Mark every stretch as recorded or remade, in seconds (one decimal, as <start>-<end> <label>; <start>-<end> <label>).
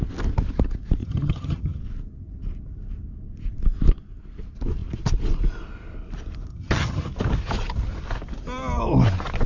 0.0-1.0 recorded; 1.0-1.8 remade; 1.8-6.5 recorded; 6.5-7.1 remade; 7.1-9.5 recorded